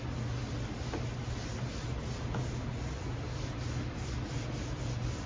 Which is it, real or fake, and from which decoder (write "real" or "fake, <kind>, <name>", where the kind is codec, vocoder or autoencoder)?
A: real